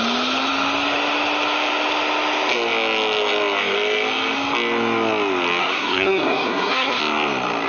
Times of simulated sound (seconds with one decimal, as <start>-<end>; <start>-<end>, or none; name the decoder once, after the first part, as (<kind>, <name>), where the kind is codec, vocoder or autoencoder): 5.6-7.0 (codec, SNAC)

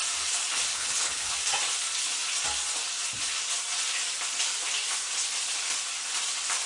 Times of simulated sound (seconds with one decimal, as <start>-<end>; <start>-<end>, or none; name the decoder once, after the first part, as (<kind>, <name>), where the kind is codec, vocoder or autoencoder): 0.7-1.3 (codec, HILCodec)

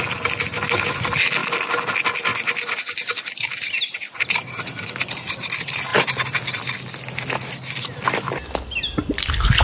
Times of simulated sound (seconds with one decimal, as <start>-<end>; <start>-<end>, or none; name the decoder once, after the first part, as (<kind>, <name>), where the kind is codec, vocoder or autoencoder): 1.4-1.9 (vocoder, BigVGAN v2); 5.9-6.6

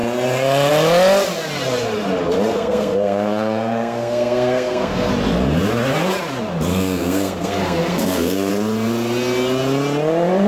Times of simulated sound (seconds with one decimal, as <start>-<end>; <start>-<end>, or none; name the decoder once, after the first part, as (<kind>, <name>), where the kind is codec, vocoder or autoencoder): 2.5-5.1 (codec, SNAC); 6.7-8.5

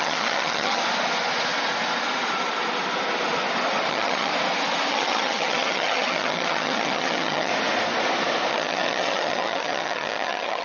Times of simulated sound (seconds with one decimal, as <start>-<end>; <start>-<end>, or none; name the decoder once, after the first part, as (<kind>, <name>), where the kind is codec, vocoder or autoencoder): 0.0-0.8 (vocoder, HiFi-GAN); 3.9-4.3; 4.9-7.5; 8.5-10.6

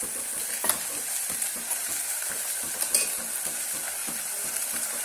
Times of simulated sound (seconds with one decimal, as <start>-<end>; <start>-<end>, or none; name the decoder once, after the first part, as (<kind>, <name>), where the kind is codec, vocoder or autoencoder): 4.0-5.0 (vocoder, BigVGAN v2)